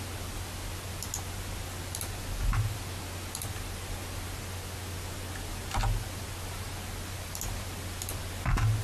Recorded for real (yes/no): yes